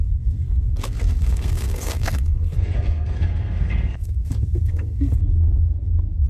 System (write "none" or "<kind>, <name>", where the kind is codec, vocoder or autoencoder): codec, SNAC